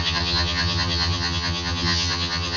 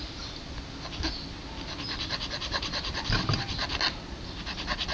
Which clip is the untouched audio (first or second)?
second